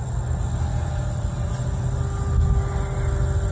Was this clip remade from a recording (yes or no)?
no